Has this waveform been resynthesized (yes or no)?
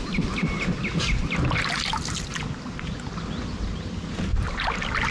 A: no